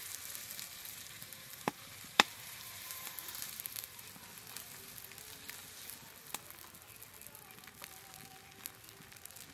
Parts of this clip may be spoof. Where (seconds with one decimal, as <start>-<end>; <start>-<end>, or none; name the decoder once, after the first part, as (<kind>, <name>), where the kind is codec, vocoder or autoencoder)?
0.9-4.1 (vocoder, BigVGAN v2)